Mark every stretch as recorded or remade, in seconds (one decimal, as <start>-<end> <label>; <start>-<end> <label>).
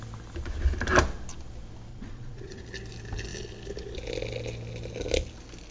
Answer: 0.0-1.9 recorded; 1.9-2.6 remade; 2.6-5.7 recorded